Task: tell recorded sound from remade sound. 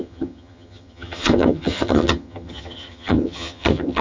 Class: remade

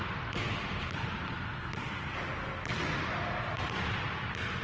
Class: recorded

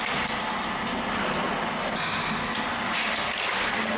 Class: recorded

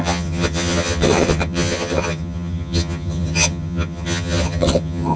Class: remade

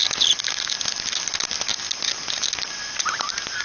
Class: recorded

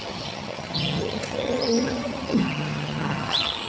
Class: remade